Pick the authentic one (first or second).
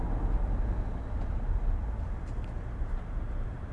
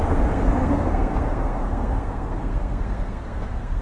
first